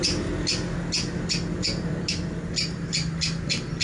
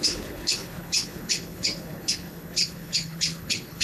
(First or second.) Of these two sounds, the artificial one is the second